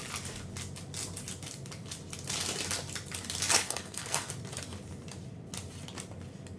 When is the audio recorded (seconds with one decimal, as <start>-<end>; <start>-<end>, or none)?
0.0-3.6; 4.3-6.6